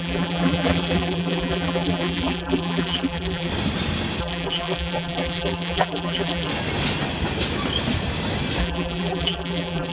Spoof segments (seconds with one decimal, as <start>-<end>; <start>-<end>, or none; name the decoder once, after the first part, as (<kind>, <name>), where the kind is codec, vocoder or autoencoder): 0.0-3.5 (vocoder, BigVGAN v2); 4.2-6.5; 8.6-9.9